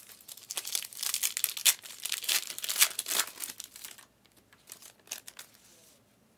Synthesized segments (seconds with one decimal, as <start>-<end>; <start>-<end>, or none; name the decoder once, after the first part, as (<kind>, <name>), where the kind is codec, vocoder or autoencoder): none